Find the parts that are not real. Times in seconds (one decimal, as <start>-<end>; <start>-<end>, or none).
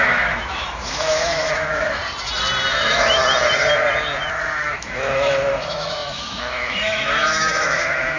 0.0-2.0; 2.7-3.2; 4.4-8.2